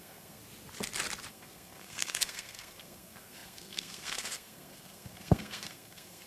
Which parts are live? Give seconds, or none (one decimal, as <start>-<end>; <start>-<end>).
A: 0.4-1.3